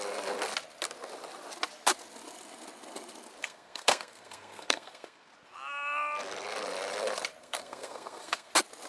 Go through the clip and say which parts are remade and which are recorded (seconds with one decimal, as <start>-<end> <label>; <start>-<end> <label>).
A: 0.0-3.4 recorded; 3.4-5.3 remade; 5.3-7.4 recorded; 7.4-8.5 remade; 8.5-8.9 recorded